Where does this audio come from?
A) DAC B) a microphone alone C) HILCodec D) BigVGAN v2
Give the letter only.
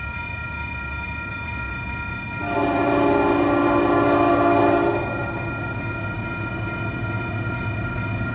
B